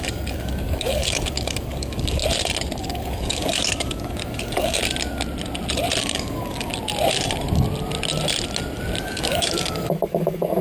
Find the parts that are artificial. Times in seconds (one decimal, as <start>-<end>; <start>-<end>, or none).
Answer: 0.0-2.2; 2.8-4.8; 6.0-6.7; 9.0-10.6